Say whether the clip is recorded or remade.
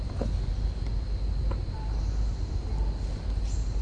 recorded